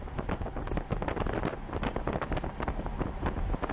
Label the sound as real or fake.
real